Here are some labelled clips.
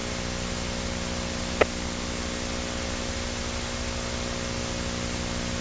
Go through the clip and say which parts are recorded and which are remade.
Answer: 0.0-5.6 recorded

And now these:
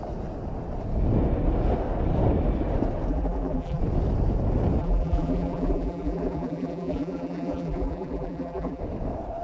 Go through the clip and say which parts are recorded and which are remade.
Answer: 0.0-3.1 recorded; 3.1-3.8 remade; 3.8-4.8 recorded; 4.8-8.8 remade; 8.8-9.4 recorded

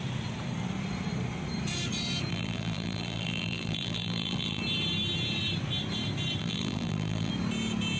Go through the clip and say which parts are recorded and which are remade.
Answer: 0.0-2.3 recorded; 2.3-4.6 remade; 4.6-6.4 recorded; 6.4-7.3 remade; 7.3-8.0 recorded

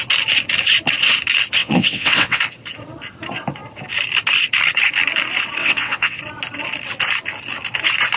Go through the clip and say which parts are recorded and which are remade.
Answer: 0.0-1.6 recorded; 1.6-2.4 remade; 2.4-5.6 recorded; 5.6-6.2 remade; 6.2-8.2 recorded

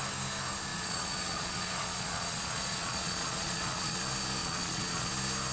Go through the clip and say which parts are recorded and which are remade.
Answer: 0.0-0.7 recorded; 0.7-4.0 remade; 4.0-4.4 recorded; 4.4-5.1 remade; 5.1-5.5 recorded

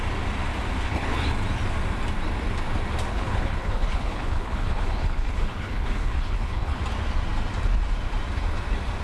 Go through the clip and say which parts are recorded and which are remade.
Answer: 0.0-0.8 recorded; 0.8-1.3 remade; 1.3-3.1 recorded; 3.1-6.8 remade; 6.8-9.0 recorded